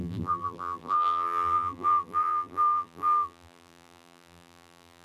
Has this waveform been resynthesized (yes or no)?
yes